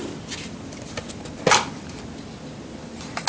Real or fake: real